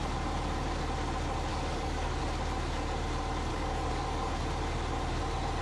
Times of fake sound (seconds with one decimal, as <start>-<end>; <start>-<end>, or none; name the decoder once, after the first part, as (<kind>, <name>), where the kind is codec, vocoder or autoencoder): 1.5-2.2 (codec, DAC); 3.5-4.3